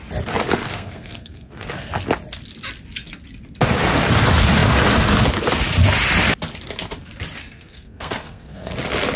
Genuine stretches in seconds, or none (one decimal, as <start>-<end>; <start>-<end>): 0.0-0.6; 1.7-7.4; 8.7-9.2